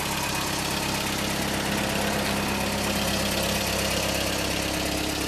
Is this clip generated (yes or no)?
no